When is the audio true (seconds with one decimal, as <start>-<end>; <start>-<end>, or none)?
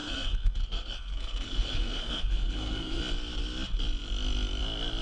3.0-5.0